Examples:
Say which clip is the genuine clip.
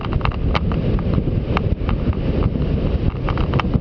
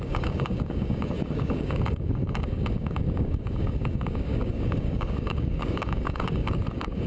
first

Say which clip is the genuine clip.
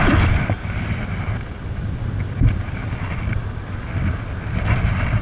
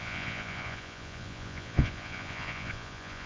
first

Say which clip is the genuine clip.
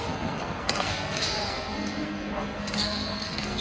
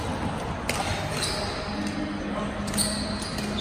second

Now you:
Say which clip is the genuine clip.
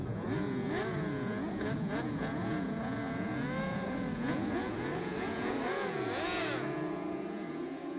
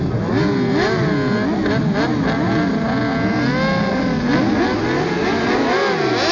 second